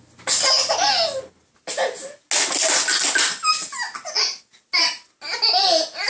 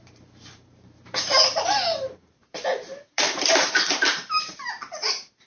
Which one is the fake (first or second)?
second